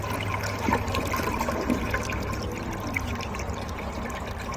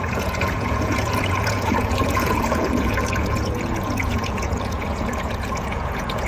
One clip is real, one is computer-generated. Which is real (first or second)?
first